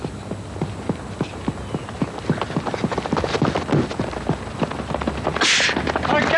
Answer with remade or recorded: recorded